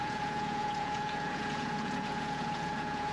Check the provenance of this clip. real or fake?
fake